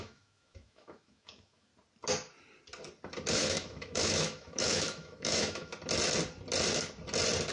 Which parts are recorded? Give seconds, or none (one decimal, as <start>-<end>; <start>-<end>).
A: 1.7-3.3; 5.7-7.5